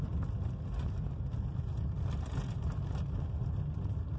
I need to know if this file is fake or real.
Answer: real